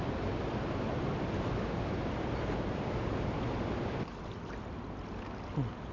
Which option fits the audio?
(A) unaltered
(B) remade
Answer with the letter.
A